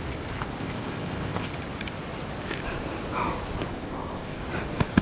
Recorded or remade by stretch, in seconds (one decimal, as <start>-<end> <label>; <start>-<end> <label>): 0.0-0.6 recorded; 0.6-1.5 remade; 1.5-3.7 recorded; 3.7-4.4 remade; 4.4-5.0 recorded